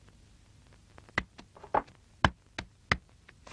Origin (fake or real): real